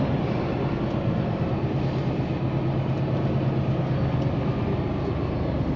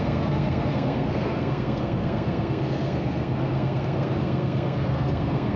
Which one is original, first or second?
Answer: first